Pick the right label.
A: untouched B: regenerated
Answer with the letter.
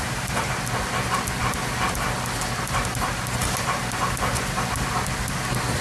A